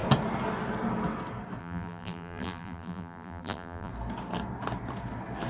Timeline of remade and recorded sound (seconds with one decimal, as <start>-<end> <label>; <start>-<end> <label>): 0.0-1.6 recorded; 1.6-3.9 remade; 3.9-5.5 recorded